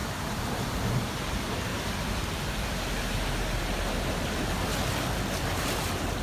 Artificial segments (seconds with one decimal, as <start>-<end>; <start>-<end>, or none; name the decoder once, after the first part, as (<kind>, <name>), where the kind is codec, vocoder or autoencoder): 0.0-1.7 (vocoder, BigVGAN v2); 5.4-6.2